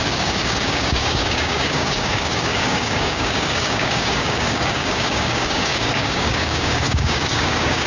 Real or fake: fake